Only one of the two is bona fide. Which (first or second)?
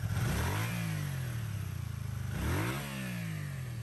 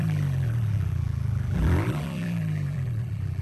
first